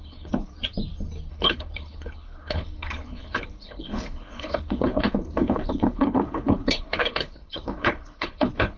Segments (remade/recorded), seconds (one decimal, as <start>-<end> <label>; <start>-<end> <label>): 0.0-0.5 remade; 0.5-1.3 recorded; 1.3-8.8 remade